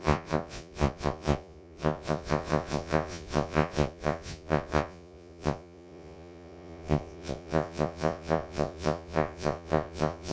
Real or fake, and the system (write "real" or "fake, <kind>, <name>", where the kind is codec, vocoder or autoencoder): fake, vocoder, Vocos